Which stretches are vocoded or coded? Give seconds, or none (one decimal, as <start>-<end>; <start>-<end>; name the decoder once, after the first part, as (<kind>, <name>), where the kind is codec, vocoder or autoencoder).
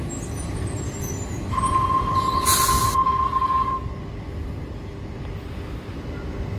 3.0-3.9 (codec, DAC)